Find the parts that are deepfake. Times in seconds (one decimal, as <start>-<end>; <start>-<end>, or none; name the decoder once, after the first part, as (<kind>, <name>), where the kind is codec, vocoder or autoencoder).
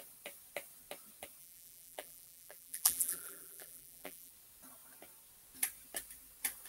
1.4-4.3 (vocoder, BigVGAN v2)